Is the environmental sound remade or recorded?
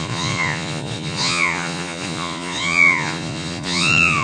remade